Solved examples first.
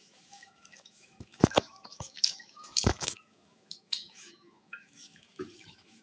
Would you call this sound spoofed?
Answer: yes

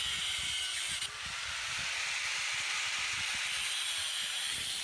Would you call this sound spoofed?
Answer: no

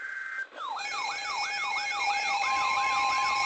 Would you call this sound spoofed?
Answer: yes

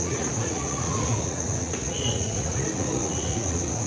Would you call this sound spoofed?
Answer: yes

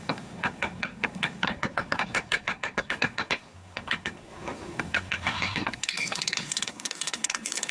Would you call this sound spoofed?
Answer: yes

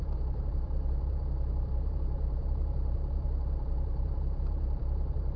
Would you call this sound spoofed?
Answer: yes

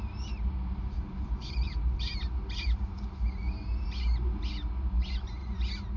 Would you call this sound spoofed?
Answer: no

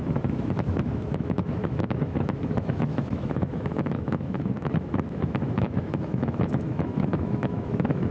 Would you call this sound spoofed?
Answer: yes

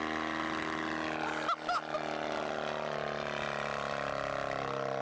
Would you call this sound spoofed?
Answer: no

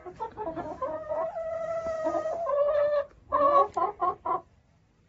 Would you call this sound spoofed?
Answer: no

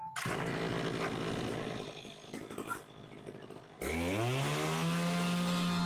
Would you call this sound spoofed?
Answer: no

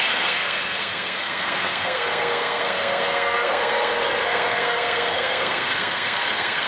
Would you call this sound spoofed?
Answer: yes